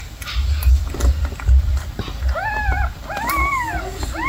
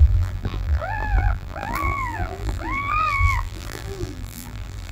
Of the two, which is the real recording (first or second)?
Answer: first